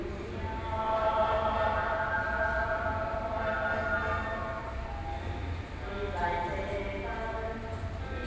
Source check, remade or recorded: recorded